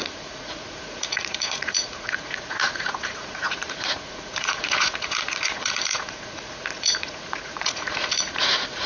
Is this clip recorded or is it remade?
remade